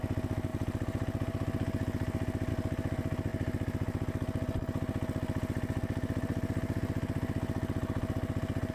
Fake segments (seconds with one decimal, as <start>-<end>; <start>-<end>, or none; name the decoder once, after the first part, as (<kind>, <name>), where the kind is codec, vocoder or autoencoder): none